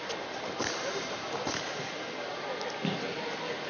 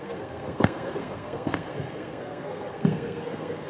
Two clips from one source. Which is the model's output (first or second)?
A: second